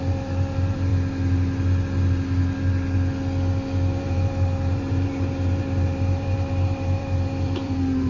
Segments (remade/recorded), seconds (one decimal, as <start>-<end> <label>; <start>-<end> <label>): 0.0-0.9 remade; 0.9-4.0 recorded; 4.0-8.1 remade

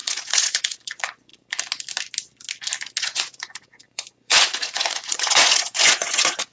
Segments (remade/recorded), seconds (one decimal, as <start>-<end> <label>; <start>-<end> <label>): 0.0-1.3 remade; 1.3-3.0 recorded; 3.0-6.5 remade